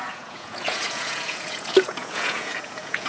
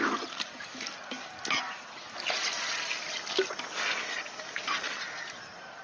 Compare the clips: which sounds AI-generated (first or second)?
first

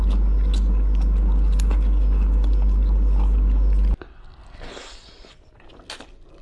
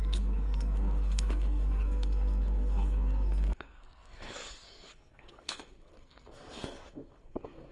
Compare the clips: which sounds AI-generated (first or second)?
second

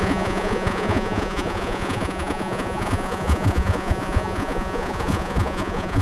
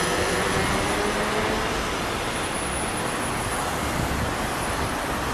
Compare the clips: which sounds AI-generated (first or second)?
first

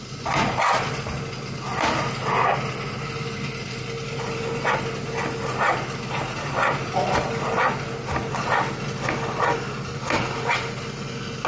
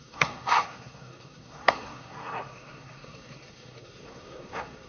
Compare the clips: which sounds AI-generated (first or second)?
second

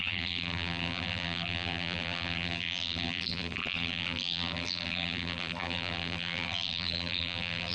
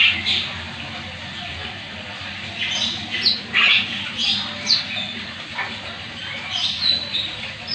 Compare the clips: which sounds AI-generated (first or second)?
first